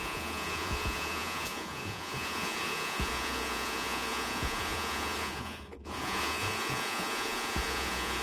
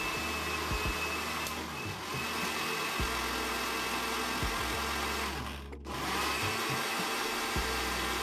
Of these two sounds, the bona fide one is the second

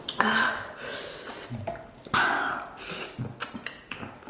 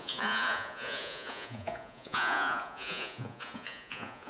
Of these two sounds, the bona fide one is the first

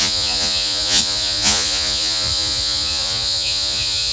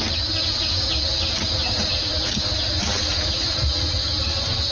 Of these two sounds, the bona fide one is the second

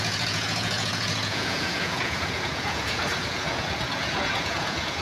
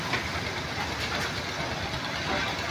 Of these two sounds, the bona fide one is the second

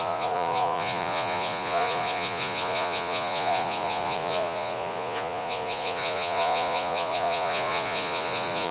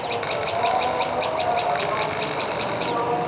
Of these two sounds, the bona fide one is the second